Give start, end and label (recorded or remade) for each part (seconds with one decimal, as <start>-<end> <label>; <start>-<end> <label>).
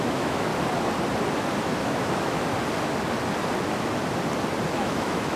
0.0-0.5 remade; 0.5-1.6 recorded; 1.6-2.4 remade; 2.4-4.7 recorded; 4.7-5.4 remade